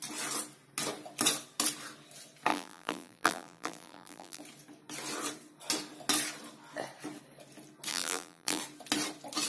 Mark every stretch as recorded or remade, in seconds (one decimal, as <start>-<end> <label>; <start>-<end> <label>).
0.0-2.5 recorded; 2.5-4.4 remade; 4.4-7.9 recorded; 7.9-8.6 remade; 8.6-9.5 recorded